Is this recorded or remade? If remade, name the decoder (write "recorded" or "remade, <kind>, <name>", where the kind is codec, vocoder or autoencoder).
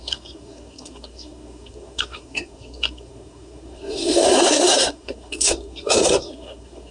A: remade, codec, SNAC